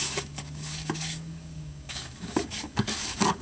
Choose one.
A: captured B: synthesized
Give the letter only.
B